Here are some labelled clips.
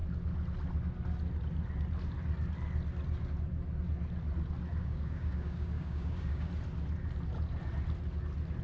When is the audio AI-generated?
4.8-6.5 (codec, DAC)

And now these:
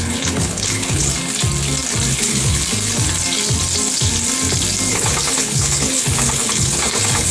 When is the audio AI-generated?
0.0-1.1 (codec, HILCodec); 2.1-2.6; 4.9-7.3

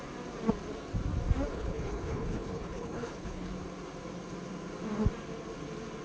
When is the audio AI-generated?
1.5-3.5 (codec, HILCodec)

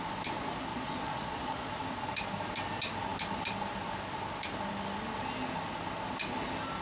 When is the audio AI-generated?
0.7-1.7 (vocoder, Vocos)

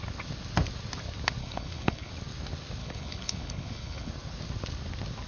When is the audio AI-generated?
1.4-2.1 (codec, HILCodec); 2.8-4.1

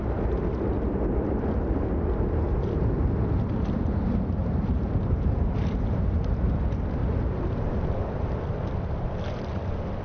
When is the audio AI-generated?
4.4-6.6 (vocoder, BigVGAN v2); 7.0-7.8

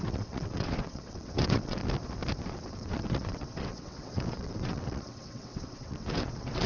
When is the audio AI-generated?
0.0-1.8 (vocoder, WaveNeXt); 2.4-6.7

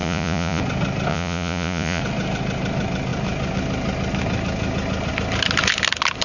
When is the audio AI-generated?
0.0-0.6 (vocoder, Vocos); 1.1-2.0